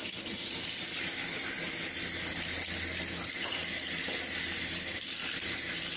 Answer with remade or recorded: recorded